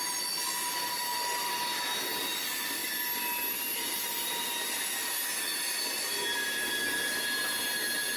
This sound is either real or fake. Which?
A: real